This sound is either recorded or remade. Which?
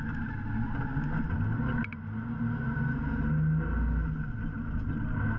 recorded